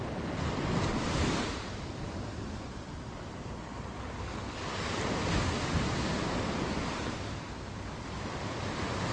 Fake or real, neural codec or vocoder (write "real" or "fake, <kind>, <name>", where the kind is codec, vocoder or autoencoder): real